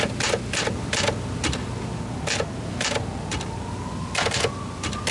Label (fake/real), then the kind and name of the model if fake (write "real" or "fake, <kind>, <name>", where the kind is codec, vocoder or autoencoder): real